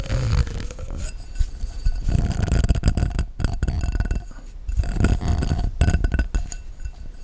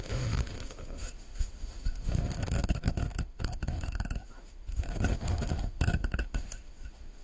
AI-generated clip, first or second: second